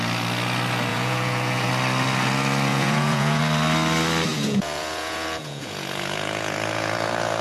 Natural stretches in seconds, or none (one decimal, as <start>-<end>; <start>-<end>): 0.0-0.9; 1.7-2.7; 3.4-4.3